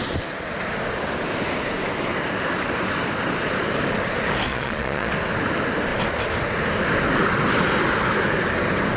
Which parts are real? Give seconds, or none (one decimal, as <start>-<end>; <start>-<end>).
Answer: 0.0-4.5; 5.1-9.0

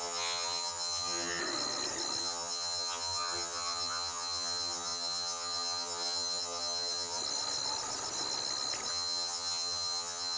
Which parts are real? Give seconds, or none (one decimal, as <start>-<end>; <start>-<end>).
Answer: 1.4-2.2; 7.2-8.9

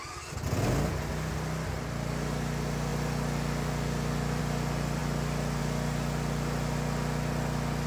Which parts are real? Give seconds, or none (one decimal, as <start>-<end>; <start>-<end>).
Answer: 0.0-7.9